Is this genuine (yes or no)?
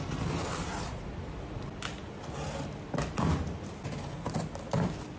yes